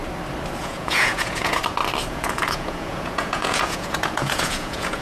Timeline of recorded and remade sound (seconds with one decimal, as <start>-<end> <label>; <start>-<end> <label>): 0.0-0.6 recorded; 0.6-1.6 remade; 1.6-2.1 recorded; 2.1-5.0 remade